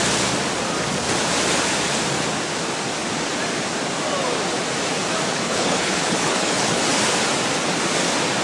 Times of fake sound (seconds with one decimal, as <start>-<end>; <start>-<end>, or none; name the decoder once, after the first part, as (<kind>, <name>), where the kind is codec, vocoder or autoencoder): 5.3-6.9 (codec, HILCodec)